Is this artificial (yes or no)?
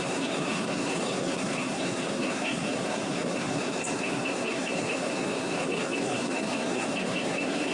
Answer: yes